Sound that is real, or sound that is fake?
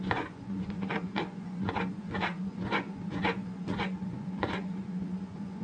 fake